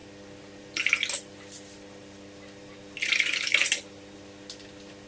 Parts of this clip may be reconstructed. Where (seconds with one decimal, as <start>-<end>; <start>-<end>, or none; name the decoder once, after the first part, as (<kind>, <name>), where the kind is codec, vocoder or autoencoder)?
none